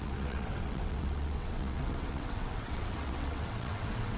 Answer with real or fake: fake